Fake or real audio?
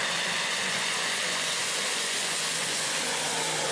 fake